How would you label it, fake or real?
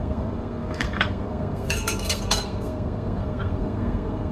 fake